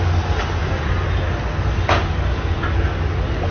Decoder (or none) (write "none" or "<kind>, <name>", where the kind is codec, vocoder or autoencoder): none